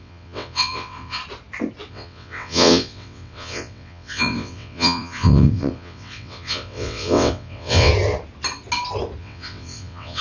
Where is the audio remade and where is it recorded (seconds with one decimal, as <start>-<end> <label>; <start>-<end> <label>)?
0.0-1.2 remade; 1.2-1.9 recorded; 1.9-7.9 remade; 7.9-9.2 recorded; 9.2-10.2 remade